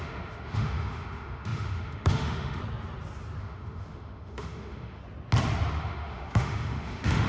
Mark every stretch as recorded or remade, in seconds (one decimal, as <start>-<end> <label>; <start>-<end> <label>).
0.0-2.6 remade; 2.6-3.4 recorded; 3.4-5.0 remade; 5.0-5.8 recorded; 5.8-7.3 remade